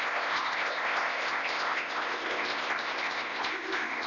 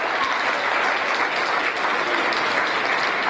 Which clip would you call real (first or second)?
second